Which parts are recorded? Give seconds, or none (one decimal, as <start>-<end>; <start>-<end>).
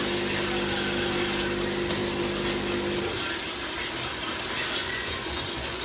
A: 0.0-4.8